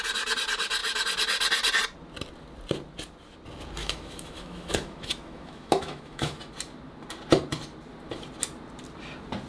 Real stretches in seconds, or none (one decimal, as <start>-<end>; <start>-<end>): 0.0-3.8; 6.4-9.5

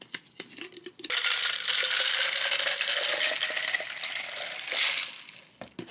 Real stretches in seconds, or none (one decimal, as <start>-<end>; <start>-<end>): 0.0-5.9

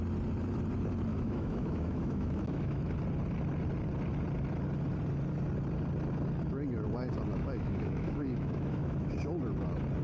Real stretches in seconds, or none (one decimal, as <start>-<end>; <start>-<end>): 0.0-1.1; 2.9-7.3; 9.1-10.0